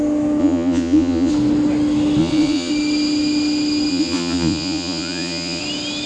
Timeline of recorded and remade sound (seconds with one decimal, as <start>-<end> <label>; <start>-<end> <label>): 0.0-0.4 recorded; 0.4-1.3 remade; 1.3-2.2 recorded; 2.2-2.7 remade; 2.7-3.9 recorded; 3.9-5.6 remade; 5.6-6.1 recorded